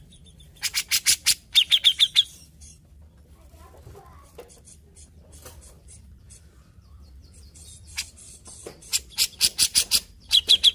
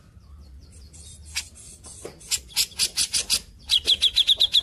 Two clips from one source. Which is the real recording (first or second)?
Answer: second